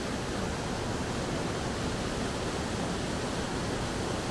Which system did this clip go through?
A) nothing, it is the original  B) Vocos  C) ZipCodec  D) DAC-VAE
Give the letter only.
A